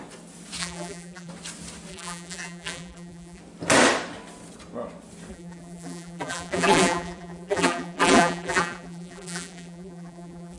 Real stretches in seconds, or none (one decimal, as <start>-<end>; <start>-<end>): 0.0-0.6; 1.3-1.9; 3.4-5.3